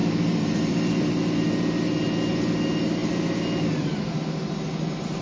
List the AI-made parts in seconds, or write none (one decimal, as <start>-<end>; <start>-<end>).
0.0-1.1